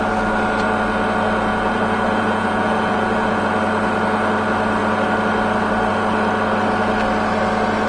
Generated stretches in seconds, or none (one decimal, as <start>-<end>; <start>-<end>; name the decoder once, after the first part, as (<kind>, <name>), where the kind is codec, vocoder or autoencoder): 1.5-3.4 (vocoder, Vocos)

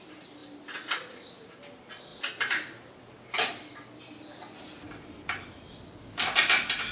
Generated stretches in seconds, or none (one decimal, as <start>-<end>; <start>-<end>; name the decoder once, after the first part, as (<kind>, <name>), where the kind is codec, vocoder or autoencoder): none

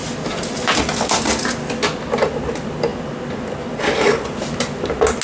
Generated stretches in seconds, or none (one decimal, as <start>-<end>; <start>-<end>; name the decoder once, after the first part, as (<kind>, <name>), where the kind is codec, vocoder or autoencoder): none

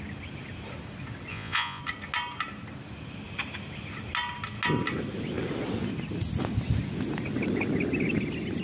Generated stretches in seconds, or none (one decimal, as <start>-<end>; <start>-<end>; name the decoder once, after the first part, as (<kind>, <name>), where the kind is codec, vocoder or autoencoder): 1.3-1.8 (vocoder, Vocos)

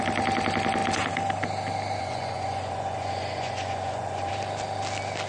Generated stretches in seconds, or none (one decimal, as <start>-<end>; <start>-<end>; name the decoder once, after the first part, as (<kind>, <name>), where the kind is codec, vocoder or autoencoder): 2.0-4.3 (vocoder, Vocos)

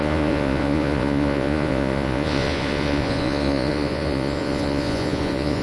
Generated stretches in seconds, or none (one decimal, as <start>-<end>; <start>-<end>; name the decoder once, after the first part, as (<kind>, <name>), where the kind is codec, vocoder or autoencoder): 0.0-5.6 (vocoder, Vocos)

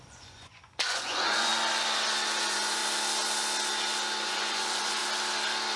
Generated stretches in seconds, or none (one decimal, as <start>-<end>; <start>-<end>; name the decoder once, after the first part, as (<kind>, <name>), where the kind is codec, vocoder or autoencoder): 0.0-1.5 (vocoder, Vocos); 2.4-2.8; 4.2-5.0

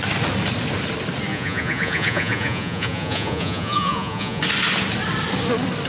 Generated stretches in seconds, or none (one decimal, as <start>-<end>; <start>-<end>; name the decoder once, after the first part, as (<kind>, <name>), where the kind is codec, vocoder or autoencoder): 1.3-4.4 (vocoder, Vocos)